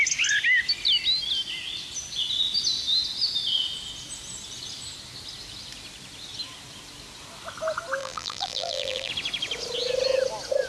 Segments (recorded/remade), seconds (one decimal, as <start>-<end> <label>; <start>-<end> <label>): 0.0-8.0 recorded; 8.0-9.1 remade; 9.1-10.7 recorded